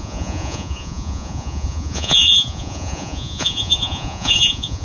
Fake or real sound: fake